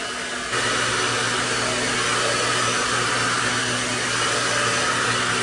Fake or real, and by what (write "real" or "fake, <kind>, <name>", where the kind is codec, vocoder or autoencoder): real